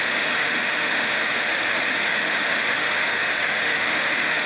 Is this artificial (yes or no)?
yes